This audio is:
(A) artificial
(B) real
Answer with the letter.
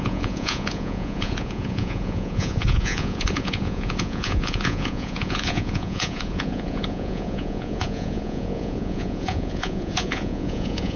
A